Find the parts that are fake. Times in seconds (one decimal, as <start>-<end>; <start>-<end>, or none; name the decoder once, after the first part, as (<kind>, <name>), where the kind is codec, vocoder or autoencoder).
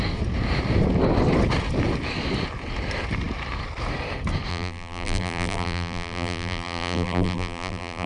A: 4.5-8.1 (vocoder, BigVGAN v2)